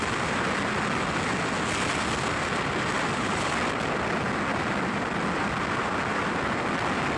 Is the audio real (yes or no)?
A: yes